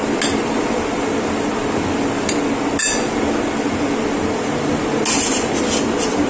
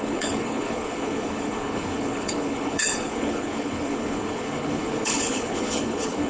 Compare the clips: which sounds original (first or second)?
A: first